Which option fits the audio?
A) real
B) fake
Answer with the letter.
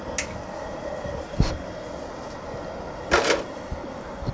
A